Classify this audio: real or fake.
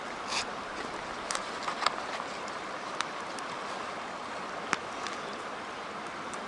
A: real